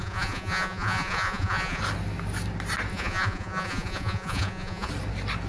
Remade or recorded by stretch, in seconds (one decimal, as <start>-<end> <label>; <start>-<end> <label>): 0.0-1.8 remade; 1.8-2.9 recorded; 2.9-4.9 remade; 4.9-5.5 recorded